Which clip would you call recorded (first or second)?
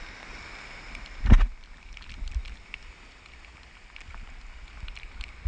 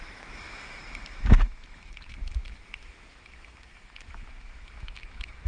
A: first